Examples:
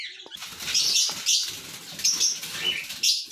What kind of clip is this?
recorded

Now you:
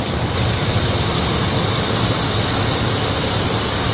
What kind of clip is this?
recorded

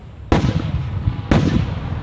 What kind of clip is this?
recorded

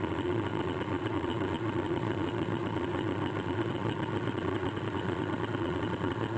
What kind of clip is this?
remade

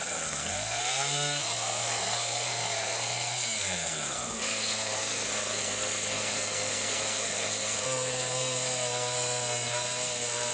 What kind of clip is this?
remade